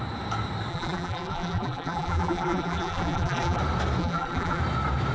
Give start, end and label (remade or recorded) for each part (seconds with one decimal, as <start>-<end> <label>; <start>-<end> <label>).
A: 0.0-0.7 recorded; 0.7-3.6 remade; 3.6-4.0 recorded; 4.0-4.6 remade; 4.6-5.1 recorded

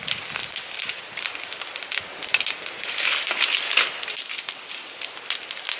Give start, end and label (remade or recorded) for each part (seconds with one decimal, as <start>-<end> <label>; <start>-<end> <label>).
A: 0.0-5.8 recorded

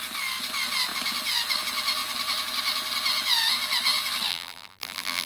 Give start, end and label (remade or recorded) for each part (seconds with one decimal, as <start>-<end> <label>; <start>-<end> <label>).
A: 0.0-4.3 recorded; 4.3-5.3 remade

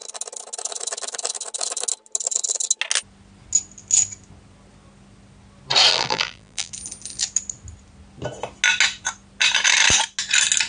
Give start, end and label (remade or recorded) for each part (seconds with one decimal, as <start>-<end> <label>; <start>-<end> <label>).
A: 0.0-5.9 recorded; 5.9-6.7 remade; 6.7-10.7 recorded

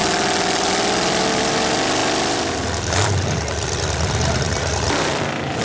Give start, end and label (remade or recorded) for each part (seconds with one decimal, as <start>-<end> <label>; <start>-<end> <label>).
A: 0.0-2.0 recorded; 2.0-5.6 remade